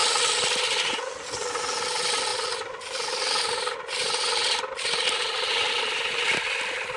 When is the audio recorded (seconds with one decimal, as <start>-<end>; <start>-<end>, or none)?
0.6-2.3; 6.3-7.0